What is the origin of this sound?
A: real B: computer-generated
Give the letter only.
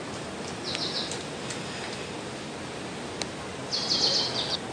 A